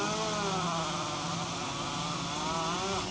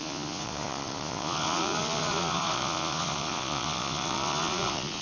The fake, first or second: second